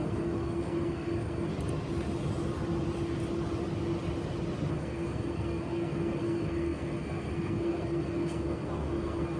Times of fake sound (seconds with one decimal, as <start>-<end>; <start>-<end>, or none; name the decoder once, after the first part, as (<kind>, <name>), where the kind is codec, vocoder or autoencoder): 0.0-1.5 (codec, SNAC); 4.7-9.4